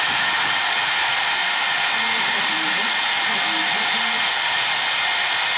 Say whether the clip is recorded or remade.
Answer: remade